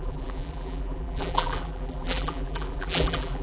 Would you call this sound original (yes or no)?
no